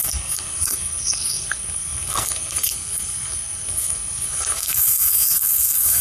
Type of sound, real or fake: fake